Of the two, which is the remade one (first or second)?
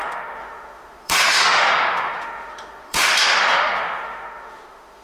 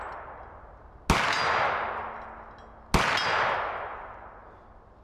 first